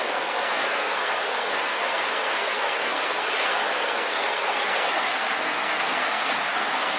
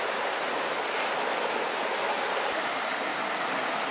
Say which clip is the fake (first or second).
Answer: first